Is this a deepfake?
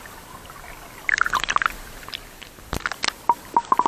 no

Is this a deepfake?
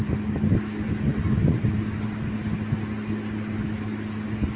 no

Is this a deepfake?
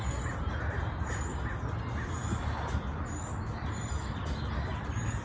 no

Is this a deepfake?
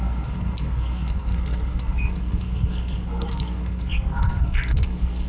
yes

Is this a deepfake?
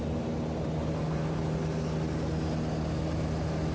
no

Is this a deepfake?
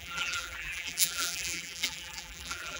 yes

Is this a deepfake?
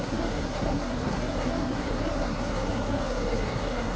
yes